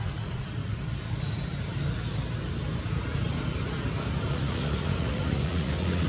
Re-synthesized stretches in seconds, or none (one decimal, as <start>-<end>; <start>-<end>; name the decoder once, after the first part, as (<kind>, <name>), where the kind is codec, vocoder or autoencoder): 0.0-0.6 (vocoder, Vocos); 4.3-6.1